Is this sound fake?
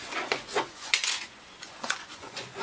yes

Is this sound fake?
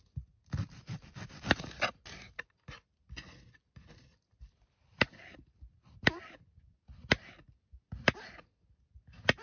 no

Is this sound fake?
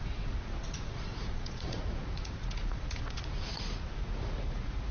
yes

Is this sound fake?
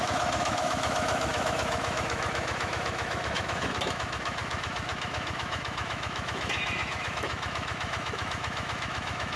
yes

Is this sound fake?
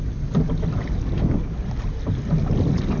no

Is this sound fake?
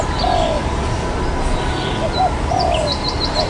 no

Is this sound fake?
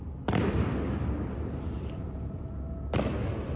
no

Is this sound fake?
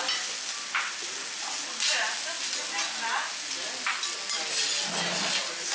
no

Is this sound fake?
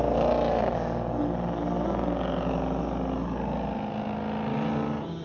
no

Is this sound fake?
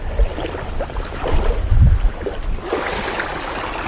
no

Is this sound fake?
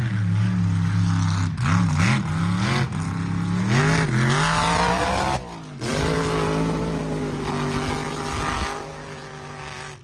no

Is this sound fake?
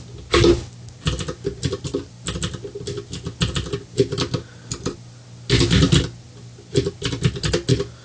no